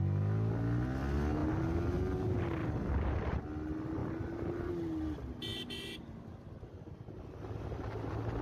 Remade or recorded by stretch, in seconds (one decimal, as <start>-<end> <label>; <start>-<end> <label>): 0.0-2.6 recorded; 2.6-3.2 remade; 3.2-4.0 recorded; 4.0-4.7 remade; 4.7-5.5 recorded; 5.5-6.5 remade; 6.5-8.4 recorded